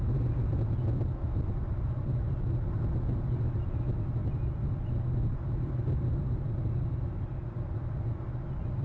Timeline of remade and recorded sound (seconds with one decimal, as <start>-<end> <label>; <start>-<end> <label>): 0.0-8.8 recorded